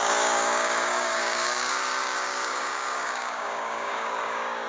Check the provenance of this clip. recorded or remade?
remade